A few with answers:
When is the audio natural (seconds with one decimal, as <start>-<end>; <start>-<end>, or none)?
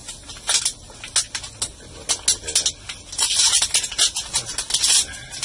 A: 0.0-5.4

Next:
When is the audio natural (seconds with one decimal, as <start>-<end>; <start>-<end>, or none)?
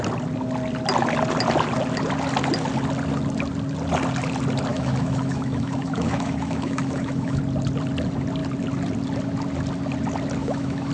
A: 0.0-4.7; 7.4-10.4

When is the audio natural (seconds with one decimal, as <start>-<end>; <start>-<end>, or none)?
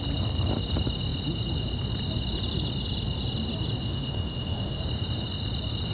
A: 0.0-3.8; 4.8-5.9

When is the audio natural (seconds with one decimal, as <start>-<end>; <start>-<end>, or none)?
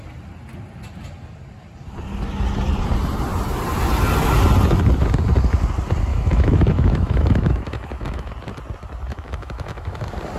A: 0.0-6.1; 8.3-9.1; 10.0-10.4